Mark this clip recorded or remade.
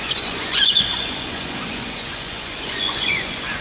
remade